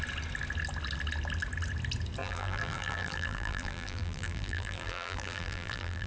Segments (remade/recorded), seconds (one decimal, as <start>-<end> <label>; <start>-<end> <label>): 0.0-2.2 recorded; 2.2-6.1 remade